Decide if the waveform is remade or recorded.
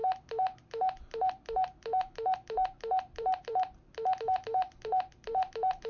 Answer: remade